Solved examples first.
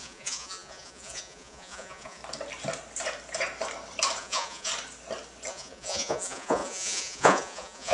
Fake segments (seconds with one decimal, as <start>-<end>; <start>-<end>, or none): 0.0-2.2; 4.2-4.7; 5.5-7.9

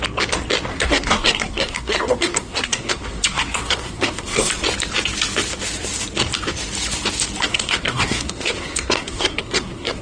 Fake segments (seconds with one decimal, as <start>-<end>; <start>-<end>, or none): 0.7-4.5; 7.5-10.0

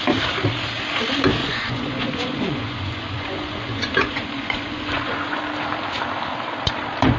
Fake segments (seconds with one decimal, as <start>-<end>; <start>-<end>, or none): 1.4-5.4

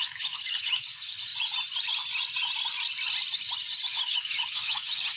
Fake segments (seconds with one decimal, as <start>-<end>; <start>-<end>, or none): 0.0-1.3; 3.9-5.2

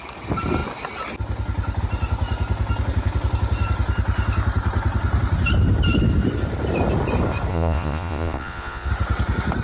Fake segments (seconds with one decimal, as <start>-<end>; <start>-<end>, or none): 7.5-8.9